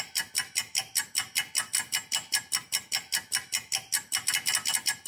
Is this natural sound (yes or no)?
yes